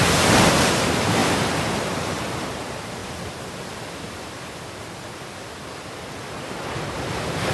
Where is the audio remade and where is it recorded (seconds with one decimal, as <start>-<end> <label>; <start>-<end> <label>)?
0.0-3.0 remade; 3.0-6.8 recorded; 6.8-7.5 remade